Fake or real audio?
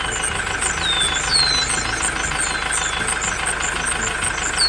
real